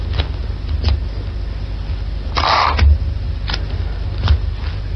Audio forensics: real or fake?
real